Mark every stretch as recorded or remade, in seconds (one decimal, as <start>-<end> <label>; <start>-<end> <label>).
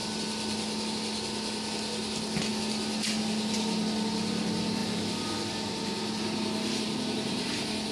0.0-7.9 recorded